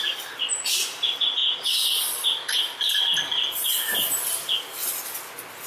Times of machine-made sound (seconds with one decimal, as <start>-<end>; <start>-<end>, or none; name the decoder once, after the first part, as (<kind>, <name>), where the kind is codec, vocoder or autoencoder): none